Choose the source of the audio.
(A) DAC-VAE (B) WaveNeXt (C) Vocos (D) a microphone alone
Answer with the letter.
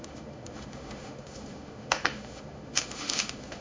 A